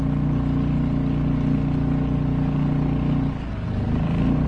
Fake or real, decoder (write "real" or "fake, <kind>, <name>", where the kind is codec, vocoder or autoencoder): real